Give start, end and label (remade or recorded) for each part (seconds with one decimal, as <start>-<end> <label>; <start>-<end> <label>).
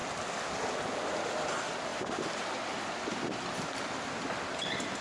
0.0-1.9 recorded; 1.9-3.4 remade; 3.4-5.0 recorded